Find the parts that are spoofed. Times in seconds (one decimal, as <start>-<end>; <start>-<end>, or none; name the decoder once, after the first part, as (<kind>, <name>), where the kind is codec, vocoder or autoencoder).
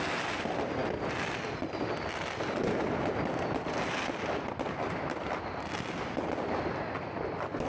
none